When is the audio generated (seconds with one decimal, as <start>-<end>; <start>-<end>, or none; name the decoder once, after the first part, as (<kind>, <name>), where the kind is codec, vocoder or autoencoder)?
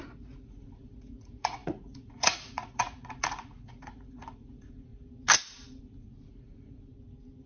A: 0.0-4.9 (vocoder, Vocos); 5.8-6.9